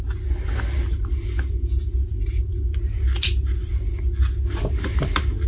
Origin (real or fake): real